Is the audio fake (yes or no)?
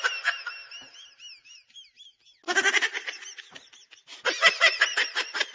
no